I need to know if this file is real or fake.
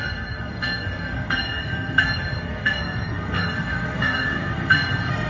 fake